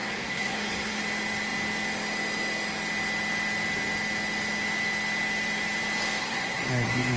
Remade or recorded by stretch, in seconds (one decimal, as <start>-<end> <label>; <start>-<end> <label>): 0.0-1.0 remade; 1.0-6.2 recorded; 6.2-7.2 remade